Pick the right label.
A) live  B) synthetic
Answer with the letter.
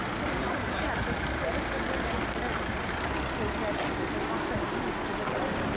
A